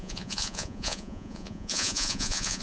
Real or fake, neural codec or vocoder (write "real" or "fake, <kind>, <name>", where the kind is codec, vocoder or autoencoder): fake, vocoder, Vocos